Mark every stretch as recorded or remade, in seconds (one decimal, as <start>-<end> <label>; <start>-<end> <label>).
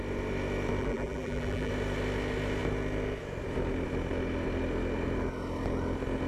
0.0-0.8 recorded; 0.8-1.7 remade; 1.7-6.3 recorded